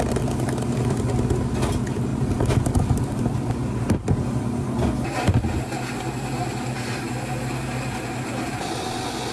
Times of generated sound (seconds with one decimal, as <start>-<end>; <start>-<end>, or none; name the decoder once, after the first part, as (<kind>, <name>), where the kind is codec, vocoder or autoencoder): none